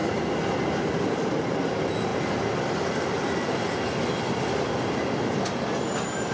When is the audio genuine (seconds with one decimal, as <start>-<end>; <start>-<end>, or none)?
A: 0.0-6.3

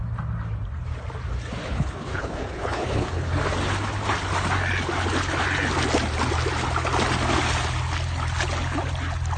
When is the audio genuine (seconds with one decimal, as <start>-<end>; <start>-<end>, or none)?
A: 0.0-1.6; 3.4-9.4

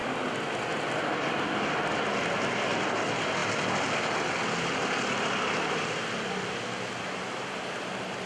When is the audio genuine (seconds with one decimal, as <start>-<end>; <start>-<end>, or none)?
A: 0.0-8.3

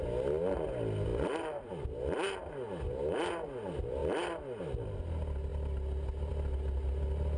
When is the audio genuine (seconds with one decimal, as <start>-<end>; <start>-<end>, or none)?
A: 0.0-1.1; 1.7-7.4

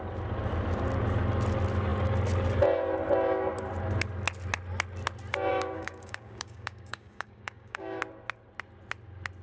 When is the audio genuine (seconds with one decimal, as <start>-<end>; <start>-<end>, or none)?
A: 0.0-5.5; 8.0-9.4